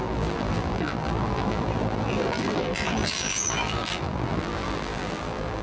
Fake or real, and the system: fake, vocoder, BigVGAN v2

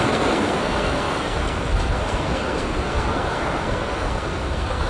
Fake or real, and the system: fake, codec, SNAC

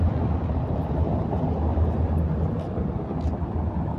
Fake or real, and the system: real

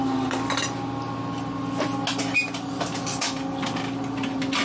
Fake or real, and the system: real